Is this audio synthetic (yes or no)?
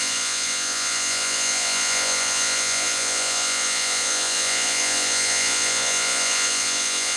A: yes